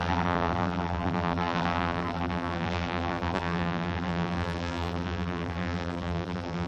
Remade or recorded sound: remade